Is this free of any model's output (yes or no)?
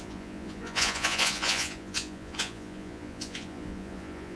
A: no